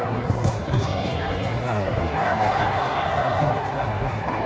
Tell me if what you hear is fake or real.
fake